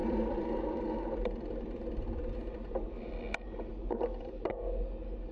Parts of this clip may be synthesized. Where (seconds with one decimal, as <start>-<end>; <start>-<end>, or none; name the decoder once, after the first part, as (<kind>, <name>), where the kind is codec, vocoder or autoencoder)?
0.0-3.2 (vocoder, BigVGAN v2)